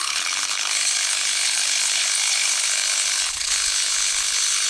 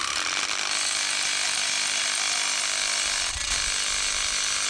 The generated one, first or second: first